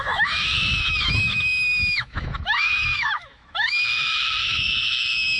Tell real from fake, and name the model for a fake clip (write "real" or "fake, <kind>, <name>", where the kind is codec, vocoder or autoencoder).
fake, autoencoder, DAC-VAE